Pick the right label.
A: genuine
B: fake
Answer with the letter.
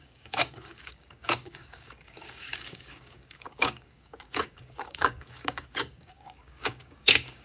B